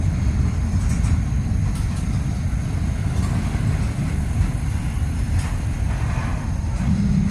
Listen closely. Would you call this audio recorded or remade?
recorded